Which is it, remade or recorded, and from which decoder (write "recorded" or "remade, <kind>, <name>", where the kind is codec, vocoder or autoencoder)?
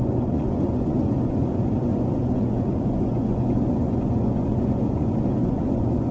remade, vocoder, Vocos